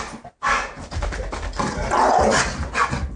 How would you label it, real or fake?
real